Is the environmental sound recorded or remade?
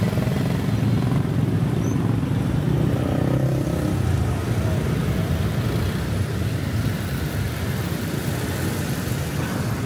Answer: recorded